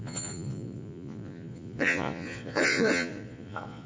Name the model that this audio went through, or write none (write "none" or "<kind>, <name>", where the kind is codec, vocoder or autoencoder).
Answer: vocoder, Vocos